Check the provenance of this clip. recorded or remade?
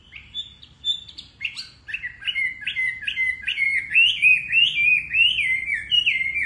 recorded